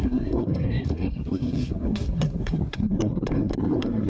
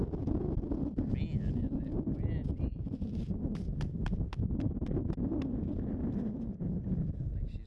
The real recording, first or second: second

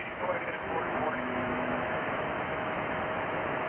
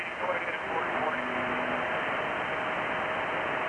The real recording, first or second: second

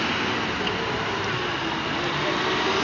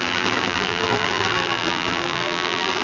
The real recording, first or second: first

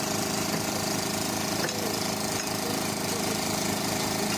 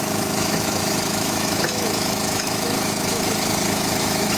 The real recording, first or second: first